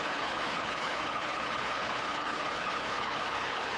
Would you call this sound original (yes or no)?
no